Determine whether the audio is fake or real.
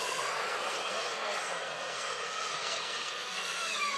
fake